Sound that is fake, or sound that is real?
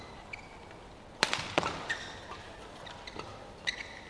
real